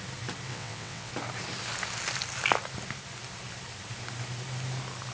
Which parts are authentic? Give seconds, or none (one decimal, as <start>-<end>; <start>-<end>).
0.0-0.5; 1.1-5.1